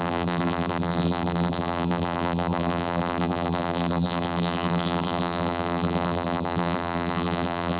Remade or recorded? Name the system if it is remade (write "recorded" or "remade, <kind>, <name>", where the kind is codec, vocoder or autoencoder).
remade, vocoder, BigVGAN v2